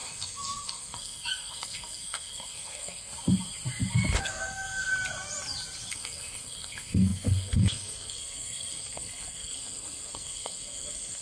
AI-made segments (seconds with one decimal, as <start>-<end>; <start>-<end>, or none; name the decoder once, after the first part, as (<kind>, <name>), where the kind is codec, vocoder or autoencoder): 0.0-3.1 (codec, SNAC); 4.2-4.9; 5.9-11.2